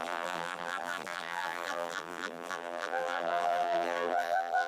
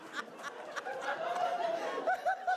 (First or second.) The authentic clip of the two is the second